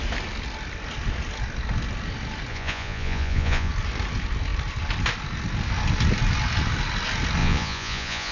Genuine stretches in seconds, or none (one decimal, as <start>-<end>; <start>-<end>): 0.0-2.5; 3.7-7.4